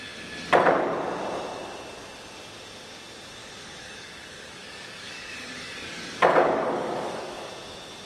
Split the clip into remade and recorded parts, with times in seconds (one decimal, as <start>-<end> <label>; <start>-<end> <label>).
0.0-3.4 recorded; 3.4-7.5 remade; 7.5-8.1 recorded